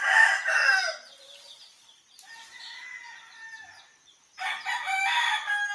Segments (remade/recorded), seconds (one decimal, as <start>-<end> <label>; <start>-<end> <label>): 0.0-5.7 recorded